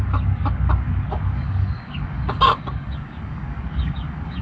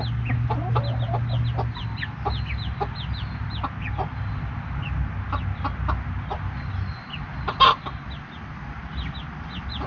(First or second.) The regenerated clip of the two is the first